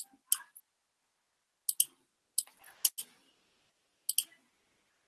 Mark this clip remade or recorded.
recorded